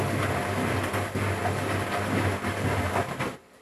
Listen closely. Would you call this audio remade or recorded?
recorded